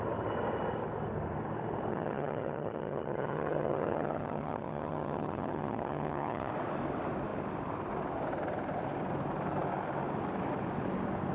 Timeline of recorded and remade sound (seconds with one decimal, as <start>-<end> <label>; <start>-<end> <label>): 0.0-1.9 recorded; 1.9-6.5 remade; 6.5-11.3 recorded